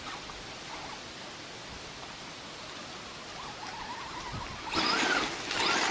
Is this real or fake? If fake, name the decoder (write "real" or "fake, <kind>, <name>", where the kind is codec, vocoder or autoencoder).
real